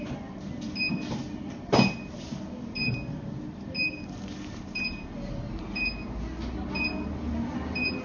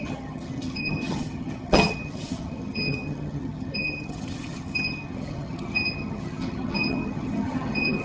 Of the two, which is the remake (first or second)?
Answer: second